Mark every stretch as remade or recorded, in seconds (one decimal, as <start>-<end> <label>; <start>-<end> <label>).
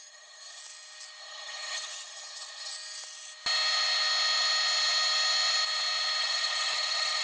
0.0-0.6 remade; 0.6-1.2 recorded; 1.2-2.7 remade; 2.7-6.2 recorded; 6.2-7.2 remade